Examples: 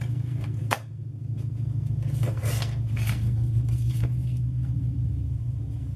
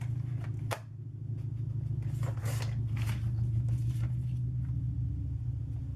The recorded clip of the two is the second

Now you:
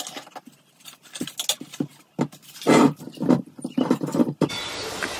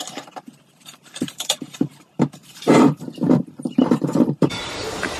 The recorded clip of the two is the first